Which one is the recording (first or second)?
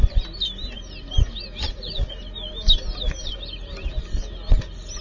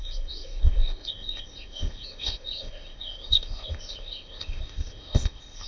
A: first